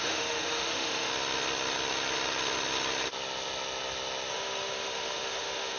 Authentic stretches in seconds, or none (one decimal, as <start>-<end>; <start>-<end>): 1.1-4.3

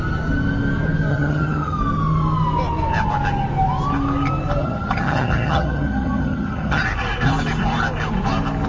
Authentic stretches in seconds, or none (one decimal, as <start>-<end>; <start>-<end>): 0.0-1.1; 1.8-4.6; 6.8-8.7

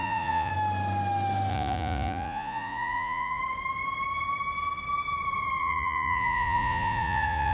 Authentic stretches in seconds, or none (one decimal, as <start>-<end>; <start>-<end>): 0.5-1.5; 3.4-5.6

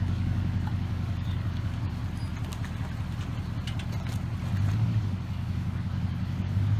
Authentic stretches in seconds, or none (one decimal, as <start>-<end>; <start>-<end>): 2.0-4.7

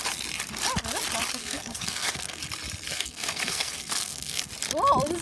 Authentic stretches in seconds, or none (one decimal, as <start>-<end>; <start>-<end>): 0.0-1.4; 2.4-2.9; 4.5-5.2

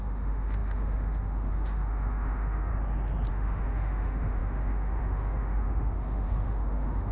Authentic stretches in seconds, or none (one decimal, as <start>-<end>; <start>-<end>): 2.7-3.3

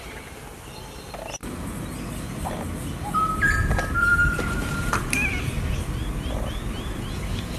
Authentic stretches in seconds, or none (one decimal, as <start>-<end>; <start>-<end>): 0.0-4.1; 4.9-7.6